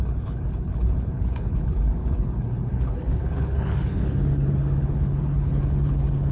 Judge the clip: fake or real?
fake